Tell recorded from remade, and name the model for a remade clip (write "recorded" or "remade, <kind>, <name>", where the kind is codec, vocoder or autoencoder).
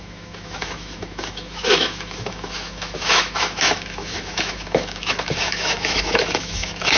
remade, autoencoder, DAC-VAE